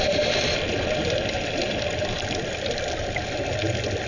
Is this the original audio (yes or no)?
yes